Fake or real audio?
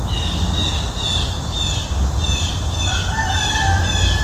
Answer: real